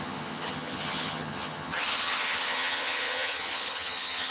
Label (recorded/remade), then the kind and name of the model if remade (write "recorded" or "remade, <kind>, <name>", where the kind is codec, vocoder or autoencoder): remade, vocoder, HiFi-GAN